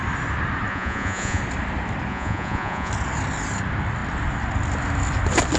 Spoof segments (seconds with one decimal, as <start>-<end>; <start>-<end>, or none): 0.7-1.4; 2.1-2.9